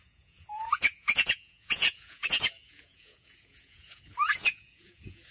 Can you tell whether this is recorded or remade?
remade